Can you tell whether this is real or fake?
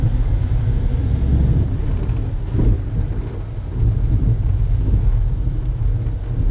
real